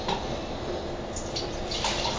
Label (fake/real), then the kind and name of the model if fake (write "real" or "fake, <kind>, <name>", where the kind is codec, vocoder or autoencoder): real